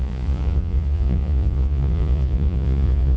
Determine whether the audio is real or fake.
fake